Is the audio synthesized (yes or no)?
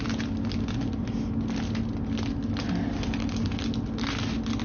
no